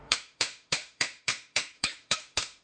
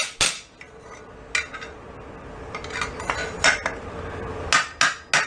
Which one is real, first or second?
second